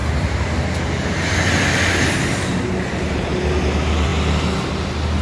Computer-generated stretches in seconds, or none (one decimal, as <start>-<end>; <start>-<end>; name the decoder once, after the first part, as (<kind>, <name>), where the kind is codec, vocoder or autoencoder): none